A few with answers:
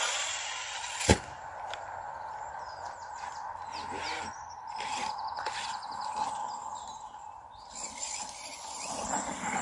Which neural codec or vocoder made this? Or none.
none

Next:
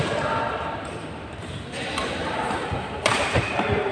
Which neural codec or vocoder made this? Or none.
vocoder, BigVGAN v2